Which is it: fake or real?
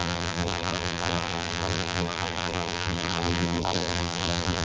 fake